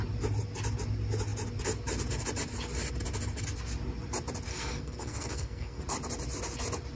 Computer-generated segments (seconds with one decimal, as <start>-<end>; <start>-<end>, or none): 4.5-5.8